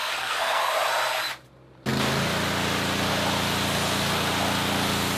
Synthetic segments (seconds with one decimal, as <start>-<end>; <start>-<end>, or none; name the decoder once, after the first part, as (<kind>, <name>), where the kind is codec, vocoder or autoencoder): 0.0-0.6 (codec, SNAC)